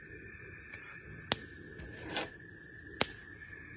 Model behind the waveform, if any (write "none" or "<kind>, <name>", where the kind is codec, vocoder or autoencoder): none